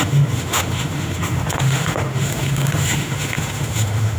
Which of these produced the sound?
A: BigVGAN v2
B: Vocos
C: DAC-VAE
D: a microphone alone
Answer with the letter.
C